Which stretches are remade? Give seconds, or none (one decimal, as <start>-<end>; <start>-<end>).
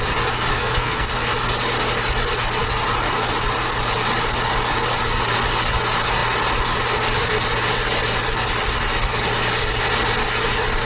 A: 0.5-1.1